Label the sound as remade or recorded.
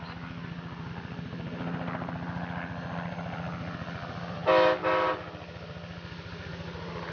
recorded